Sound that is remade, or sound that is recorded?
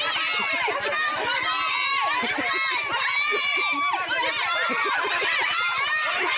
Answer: recorded